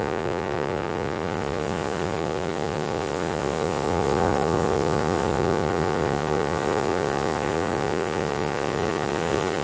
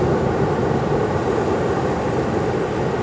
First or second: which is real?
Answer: second